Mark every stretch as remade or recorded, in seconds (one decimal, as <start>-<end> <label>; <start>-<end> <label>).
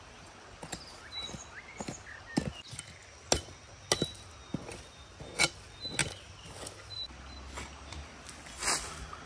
0.0-9.3 recorded